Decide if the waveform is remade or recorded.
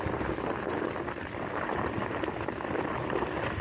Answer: remade